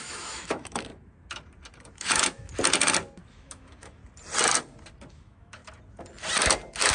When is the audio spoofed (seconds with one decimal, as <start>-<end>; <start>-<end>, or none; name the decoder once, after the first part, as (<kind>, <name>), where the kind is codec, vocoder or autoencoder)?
0.0-0.9 (autoencoder, DAC-VAE); 1.9-2.5; 3.3-4.0; 5.1-5.6